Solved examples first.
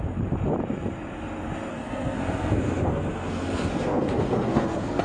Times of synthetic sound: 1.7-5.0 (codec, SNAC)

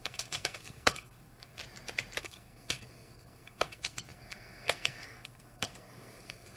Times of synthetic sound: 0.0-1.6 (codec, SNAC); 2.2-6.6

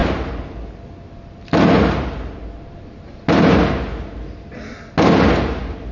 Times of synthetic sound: none